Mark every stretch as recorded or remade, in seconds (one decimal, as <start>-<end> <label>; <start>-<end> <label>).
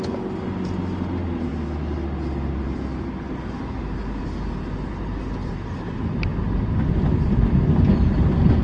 0.0-8.6 recorded